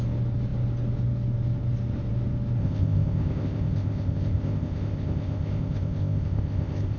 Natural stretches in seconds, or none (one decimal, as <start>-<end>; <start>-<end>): 0.0-2.6